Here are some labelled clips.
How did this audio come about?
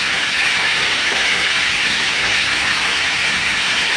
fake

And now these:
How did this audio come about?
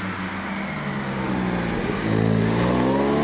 real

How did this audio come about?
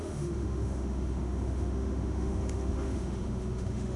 fake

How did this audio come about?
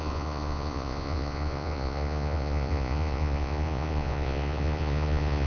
fake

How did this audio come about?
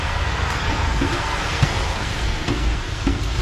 fake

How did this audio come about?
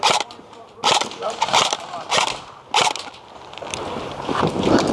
real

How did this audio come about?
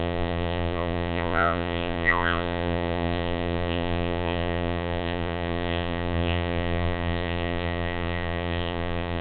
fake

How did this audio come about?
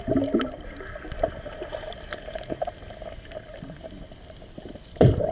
real